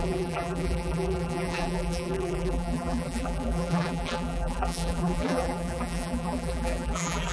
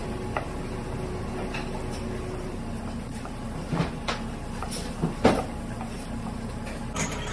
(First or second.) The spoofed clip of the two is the first